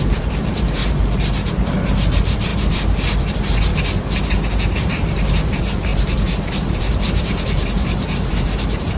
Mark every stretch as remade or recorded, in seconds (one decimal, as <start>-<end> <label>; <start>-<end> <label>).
0.0-0.8 remade; 0.8-1.9 recorded; 1.9-2.5 remade; 2.5-3.3 recorded; 3.3-3.7 remade; 3.7-4.8 recorded; 4.8-9.0 remade